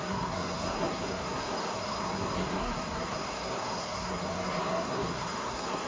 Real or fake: fake